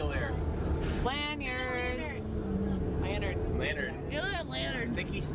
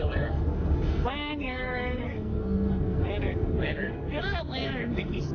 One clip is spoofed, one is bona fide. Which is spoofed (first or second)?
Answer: second